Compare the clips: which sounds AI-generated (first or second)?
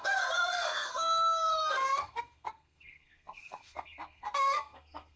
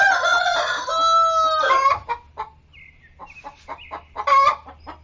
first